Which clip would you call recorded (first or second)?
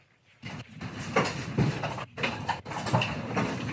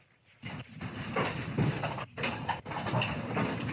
first